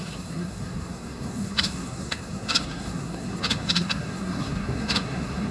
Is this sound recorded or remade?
remade